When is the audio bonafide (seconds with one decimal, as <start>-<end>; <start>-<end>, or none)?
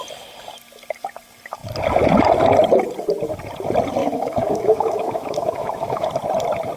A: 0.0-4.0; 6.1-6.8